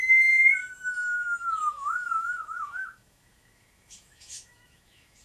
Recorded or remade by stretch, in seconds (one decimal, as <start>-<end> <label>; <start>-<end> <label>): 0.0-5.2 remade